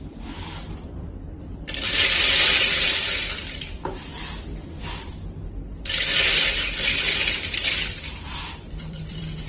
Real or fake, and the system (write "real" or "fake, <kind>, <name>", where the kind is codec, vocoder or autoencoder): fake, vocoder, BigVGAN v2